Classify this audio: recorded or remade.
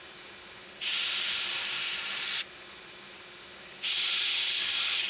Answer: recorded